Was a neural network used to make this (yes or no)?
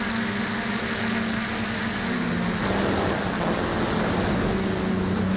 no